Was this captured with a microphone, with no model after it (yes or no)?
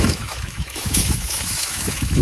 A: no